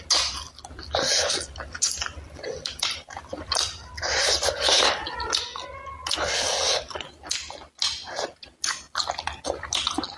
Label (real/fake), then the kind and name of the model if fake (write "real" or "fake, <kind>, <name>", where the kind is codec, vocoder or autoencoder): real